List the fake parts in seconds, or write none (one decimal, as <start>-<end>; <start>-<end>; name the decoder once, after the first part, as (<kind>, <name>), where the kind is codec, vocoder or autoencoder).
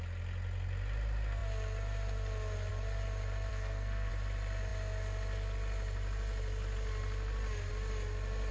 3.5-4.1 (codec, SNAC)